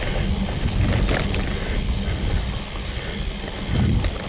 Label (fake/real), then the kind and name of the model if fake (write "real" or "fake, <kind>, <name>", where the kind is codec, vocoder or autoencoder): real